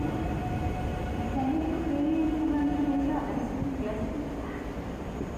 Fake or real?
real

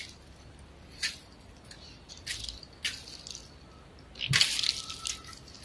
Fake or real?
real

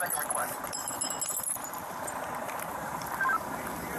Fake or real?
real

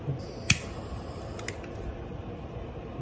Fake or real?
real